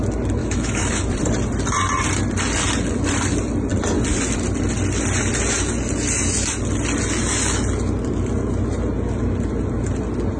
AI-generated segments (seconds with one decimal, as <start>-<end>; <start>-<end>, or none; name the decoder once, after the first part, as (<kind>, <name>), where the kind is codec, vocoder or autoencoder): 0.4-1.0 (autoencoder, DAC-VAE)